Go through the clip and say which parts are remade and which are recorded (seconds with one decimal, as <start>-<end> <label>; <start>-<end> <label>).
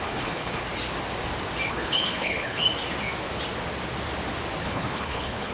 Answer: 0.0-0.6 remade; 0.6-1.7 recorded; 1.7-2.6 remade; 2.6-4.6 recorded; 4.6-5.5 remade